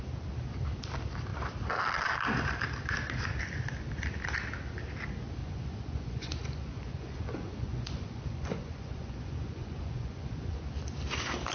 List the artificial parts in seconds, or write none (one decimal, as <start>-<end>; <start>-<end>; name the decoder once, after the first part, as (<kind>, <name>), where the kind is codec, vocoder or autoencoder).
5.4-10.6 (vocoder, Vocos)